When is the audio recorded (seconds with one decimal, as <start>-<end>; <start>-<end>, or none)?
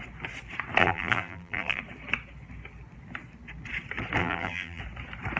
0.0-0.8; 1.8-4.2; 4.8-5.4